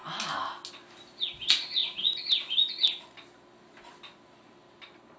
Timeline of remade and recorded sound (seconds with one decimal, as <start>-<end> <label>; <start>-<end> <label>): 0.0-5.2 recorded